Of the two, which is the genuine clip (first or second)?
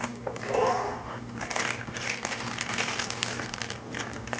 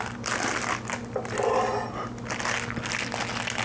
second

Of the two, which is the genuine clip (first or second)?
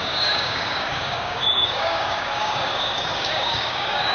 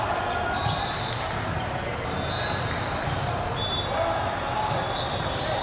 second